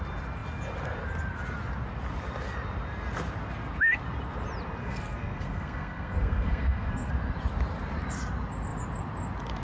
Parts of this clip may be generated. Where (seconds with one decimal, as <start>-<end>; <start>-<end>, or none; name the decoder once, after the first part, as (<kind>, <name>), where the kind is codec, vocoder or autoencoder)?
4.8-7.1 (codec, SNAC)